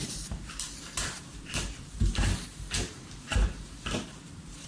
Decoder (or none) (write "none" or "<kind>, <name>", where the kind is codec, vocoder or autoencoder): vocoder, BigVGAN v2